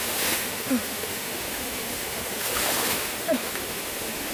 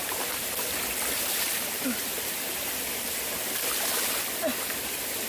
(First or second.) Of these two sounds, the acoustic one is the second